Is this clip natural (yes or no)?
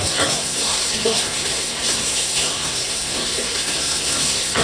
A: no